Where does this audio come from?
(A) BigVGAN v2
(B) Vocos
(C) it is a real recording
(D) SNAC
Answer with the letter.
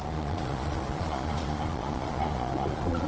B